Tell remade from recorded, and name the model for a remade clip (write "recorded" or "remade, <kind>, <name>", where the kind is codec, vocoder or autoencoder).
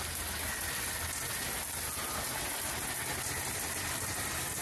recorded